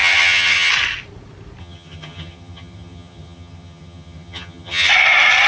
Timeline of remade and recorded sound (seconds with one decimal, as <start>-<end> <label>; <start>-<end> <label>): 0.0-0.7 remade; 0.7-1.6 recorded; 1.6-4.9 remade; 4.9-5.5 recorded